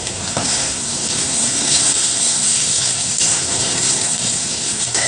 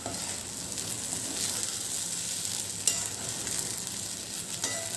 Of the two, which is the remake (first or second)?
first